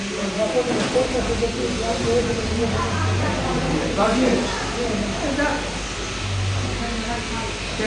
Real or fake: real